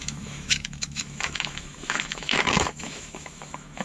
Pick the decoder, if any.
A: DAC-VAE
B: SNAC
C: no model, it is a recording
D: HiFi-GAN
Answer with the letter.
A